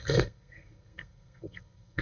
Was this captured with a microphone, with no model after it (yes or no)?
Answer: no